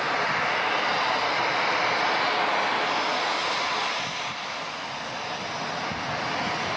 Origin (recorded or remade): recorded